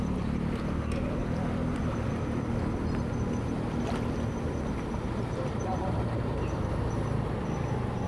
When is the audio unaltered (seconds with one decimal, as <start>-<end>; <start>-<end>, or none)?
1.2-5.0

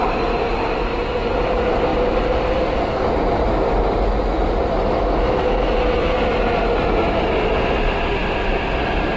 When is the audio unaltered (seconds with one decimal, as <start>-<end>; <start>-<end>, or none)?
0.0-9.2

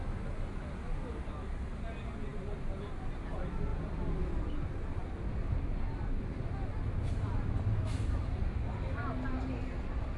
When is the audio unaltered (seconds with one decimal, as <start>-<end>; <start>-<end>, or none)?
0.0-10.2

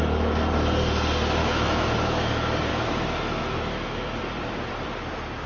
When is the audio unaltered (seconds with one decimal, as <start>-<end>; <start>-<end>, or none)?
0.0-1.4; 2.3-2.7; 4.2-5.5

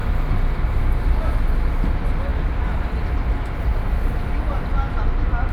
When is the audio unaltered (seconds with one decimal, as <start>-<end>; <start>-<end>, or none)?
0.0-5.5

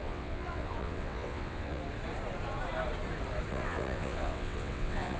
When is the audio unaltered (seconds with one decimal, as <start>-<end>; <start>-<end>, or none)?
1.8-3.5

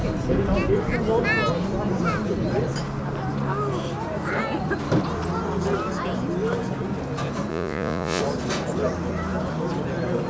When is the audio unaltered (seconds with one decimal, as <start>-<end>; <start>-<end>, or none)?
0.0-7.5; 8.2-10.3